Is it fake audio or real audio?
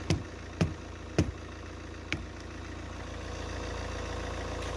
real